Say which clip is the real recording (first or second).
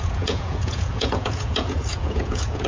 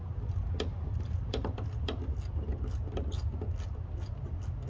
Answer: second